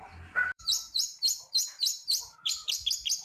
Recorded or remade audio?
remade